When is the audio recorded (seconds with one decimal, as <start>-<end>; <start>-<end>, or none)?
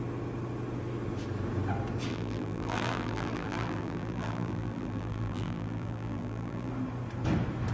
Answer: 0.0-2.1; 6.7-7.7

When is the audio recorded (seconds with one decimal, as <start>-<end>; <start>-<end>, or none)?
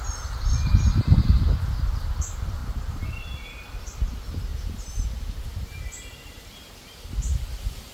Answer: 0.0-2.6; 3.8-4.5; 7.5-7.9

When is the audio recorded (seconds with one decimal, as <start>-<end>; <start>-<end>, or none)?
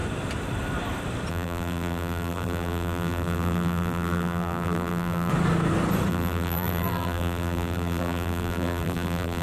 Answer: 0.0-1.3; 5.3-6.1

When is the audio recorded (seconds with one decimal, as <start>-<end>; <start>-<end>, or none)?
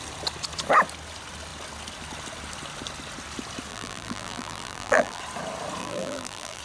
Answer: 0.0-3.7; 5.2-5.8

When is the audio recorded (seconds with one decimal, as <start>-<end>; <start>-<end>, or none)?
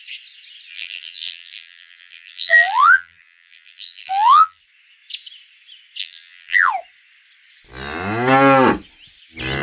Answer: 0.0-0.7; 4.6-6.0; 6.7-9.6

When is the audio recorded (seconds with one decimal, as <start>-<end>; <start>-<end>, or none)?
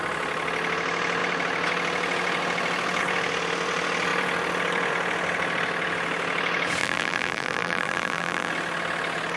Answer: 0.0-6.8; 8.5-9.4